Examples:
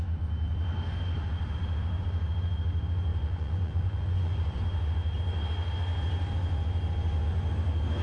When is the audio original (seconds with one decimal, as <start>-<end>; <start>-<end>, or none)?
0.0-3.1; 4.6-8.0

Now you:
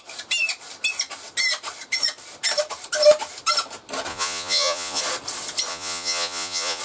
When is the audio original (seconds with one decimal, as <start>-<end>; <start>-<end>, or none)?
0.0-4.1; 5.0-5.7

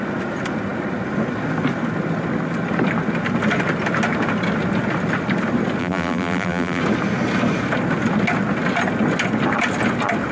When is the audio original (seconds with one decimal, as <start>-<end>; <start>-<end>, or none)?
0.0-5.8; 6.8-10.3

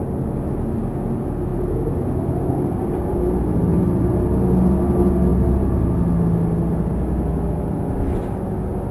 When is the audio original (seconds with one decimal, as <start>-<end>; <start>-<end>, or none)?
0.0-5.3; 5.9-8.9

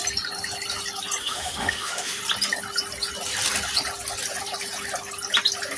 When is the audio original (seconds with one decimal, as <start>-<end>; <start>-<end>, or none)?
0.0-1.2; 2.2-5.8

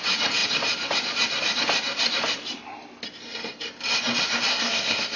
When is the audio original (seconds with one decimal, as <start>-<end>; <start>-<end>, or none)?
0.0-4.5